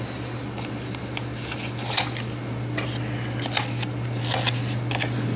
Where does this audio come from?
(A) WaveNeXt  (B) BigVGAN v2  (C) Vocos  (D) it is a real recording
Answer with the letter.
D